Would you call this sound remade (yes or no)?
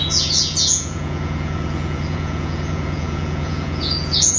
yes